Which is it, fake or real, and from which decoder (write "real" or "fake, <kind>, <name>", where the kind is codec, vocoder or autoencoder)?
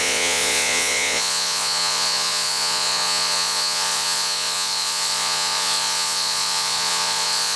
fake, vocoder, Vocos